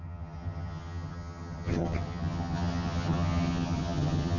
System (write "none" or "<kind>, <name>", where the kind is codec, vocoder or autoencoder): vocoder, HiFi-GAN